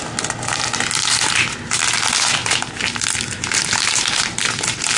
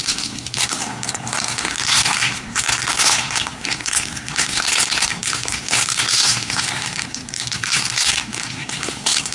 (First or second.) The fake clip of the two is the second